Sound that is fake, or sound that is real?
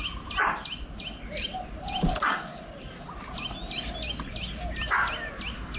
real